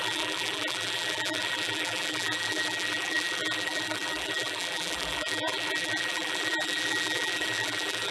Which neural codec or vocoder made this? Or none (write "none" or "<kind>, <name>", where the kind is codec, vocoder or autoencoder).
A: vocoder, BigVGAN v2